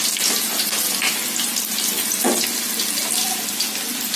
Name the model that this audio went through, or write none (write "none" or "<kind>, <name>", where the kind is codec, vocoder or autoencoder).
none